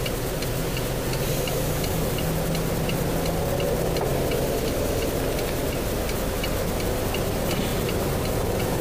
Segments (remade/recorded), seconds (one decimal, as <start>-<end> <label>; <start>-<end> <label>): 0.0-7.7 recorded; 7.7-8.8 remade